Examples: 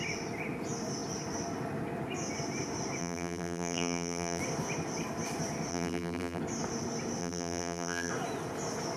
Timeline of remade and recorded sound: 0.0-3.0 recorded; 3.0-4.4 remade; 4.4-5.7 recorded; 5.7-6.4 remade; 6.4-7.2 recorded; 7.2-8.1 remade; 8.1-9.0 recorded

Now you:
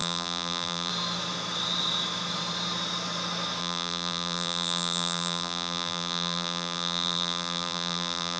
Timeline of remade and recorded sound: 0.0-0.9 remade; 0.9-3.6 recorded; 3.6-8.4 remade

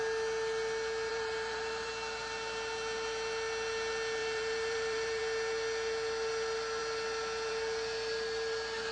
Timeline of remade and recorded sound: 0.0-1.1 recorded; 1.1-1.9 remade; 1.9-4.2 recorded; 4.2-5.2 remade; 5.2-8.9 recorded

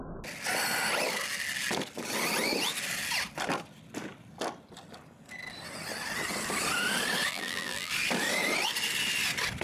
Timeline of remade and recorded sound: 0.0-7.3 recorded; 7.3-7.9 remade; 7.9-9.6 recorded

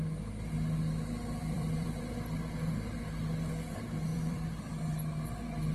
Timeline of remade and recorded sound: 0.0-1.4 recorded; 1.4-2.0 remade; 2.0-4.1 recorded; 4.1-4.7 remade; 4.7-5.7 recorded

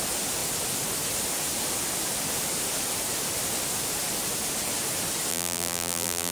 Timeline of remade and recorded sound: 0.0-5.3 recorded; 5.3-6.3 remade